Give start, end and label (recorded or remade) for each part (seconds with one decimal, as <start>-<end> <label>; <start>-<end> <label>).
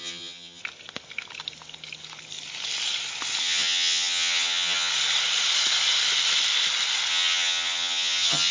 0.0-0.6 remade; 0.6-3.4 recorded; 3.4-4.9 remade; 4.9-7.1 recorded; 7.1-8.5 remade